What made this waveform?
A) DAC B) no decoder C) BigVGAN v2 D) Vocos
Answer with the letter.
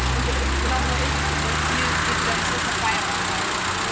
B